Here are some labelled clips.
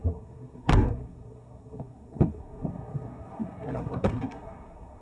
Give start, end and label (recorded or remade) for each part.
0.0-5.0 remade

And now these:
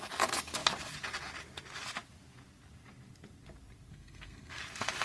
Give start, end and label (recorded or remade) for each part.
0.0-3.9 recorded; 3.9-4.6 remade; 4.6-5.0 recorded

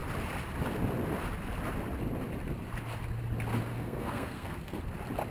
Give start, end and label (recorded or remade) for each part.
0.0-3.7 recorded; 3.7-4.8 remade; 4.8-5.3 recorded

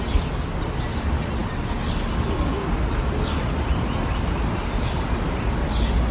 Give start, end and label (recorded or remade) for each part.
0.0-6.1 recorded

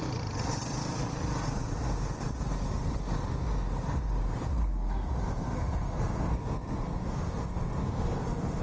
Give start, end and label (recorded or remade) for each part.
0.0-4.6 recorded; 4.6-8.6 remade

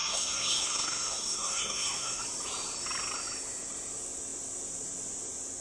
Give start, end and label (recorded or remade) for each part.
0.0-2.2 remade; 2.2-5.6 recorded

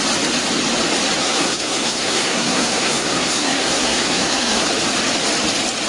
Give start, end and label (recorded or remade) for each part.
0.0-1.2 recorded; 1.2-4.7 remade; 4.7-5.9 recorded